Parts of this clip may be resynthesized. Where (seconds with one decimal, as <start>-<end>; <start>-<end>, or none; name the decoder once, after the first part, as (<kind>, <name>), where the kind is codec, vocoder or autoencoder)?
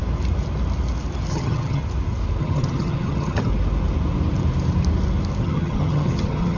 1.3-1.8 (vocoder, HiFi-GAN); 2.4-3.5; 5.4-6.6